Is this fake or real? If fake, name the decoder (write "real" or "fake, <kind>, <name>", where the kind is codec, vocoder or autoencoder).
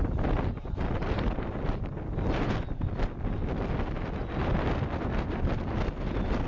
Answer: real